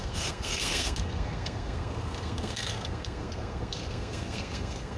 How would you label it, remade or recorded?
remade